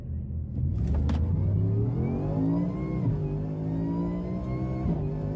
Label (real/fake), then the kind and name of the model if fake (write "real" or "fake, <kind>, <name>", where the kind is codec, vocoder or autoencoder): real